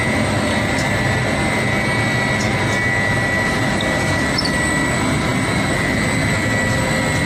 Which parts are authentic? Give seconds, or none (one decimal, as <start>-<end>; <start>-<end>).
0.0-7.3